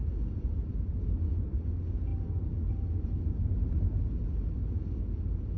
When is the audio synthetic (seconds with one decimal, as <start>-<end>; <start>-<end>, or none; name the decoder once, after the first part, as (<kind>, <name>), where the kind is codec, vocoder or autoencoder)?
none